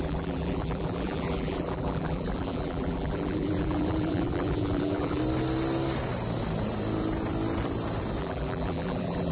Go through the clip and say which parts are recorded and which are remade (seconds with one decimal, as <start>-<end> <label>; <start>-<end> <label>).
0.0-5.2 remade; 5.2-8.2 recorded; 8.2-9.3 remade